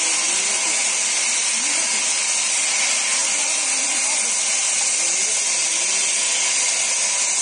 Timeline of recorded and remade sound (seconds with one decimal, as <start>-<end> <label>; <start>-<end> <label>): 0.0-7.4 recorded